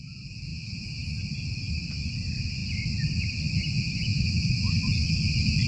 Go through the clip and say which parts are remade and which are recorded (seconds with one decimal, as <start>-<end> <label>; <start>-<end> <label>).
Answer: 0.0-0.5 remade; 0.5-1.2 recorded; 1.2-4.1 remade; 4.1-4.9 recorded; 4.9-5.7 remade